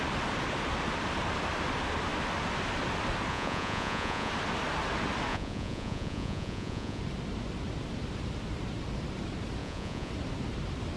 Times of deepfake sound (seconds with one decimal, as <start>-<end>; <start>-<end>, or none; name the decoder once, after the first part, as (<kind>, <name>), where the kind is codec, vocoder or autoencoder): 3.3-4.3 (vocoder, Vocos); 5.3-7.0; 9.6-10.1